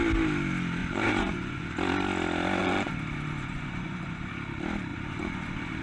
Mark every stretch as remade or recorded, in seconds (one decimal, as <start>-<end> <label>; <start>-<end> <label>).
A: 0.0-0.8 recorded; 0.8-1.7 remade; 1.7-2.6 recorded; 2.6-4.3 remade; 4.3-4.9 recorded; 4.9-5.8 remade